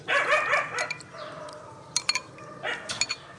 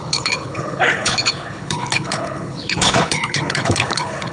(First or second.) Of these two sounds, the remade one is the second